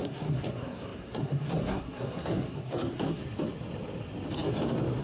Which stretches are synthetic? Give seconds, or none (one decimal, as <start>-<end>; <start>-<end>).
0.0-3.2